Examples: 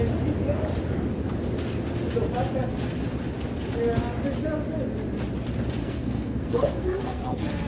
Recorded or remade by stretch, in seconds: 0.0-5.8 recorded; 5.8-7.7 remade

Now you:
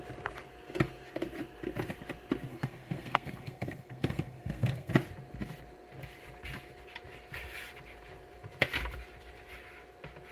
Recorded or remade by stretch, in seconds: 0.0-2.5 recorded; 2.5-4.9 remade; 4.9-10.3 recorded

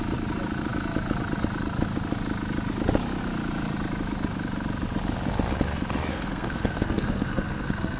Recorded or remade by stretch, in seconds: 0.0-6.1 recorded; 6.1-8.0 remade